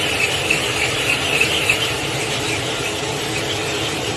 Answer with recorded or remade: recorded